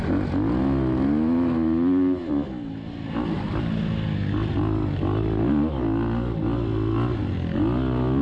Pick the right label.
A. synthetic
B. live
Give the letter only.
B